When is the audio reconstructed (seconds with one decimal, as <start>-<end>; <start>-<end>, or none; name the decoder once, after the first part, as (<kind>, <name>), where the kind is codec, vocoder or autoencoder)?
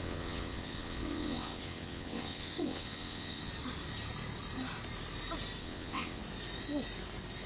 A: 0.0-3.5 (vocoder, WaveNeXt); 5.6-6.2